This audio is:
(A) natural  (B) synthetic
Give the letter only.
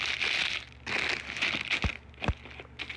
A